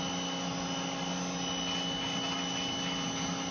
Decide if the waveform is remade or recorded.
recorded